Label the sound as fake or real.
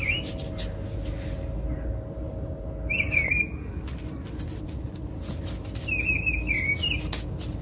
real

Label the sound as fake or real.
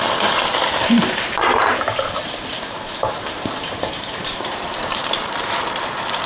fake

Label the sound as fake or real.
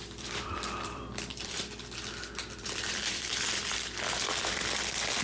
fake